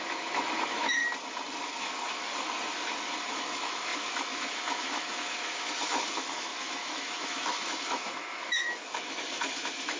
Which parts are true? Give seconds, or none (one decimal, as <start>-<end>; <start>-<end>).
1.0-1.8; 2.3-3.3